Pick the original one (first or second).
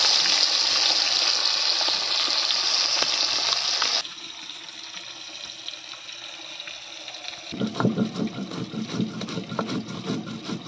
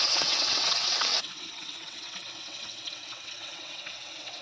first